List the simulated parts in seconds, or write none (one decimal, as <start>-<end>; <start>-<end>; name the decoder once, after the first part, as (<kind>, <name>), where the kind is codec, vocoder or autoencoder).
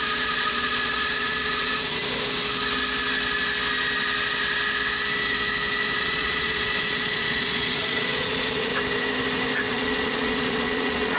0.0-2.0 (vocoder, Vocos); 6.0-8.7; 9.7-11.2